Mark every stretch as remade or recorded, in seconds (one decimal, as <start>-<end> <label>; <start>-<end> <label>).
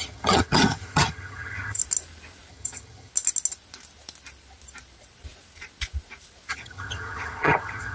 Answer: 0.0-1.8 remade; 1.8-2.5 recorded; 2.5-3.1 remade; 3.1-6.5 recorded; 6.5-7.9 remade